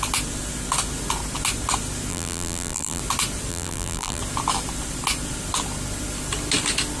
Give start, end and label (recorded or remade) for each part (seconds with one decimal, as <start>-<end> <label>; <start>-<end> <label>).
0.0-2.1 recorded; 2.1-3.0 remade; 3.0-3.5 recorded; 3.5-4.2 remade; 4.2-7.0 recorded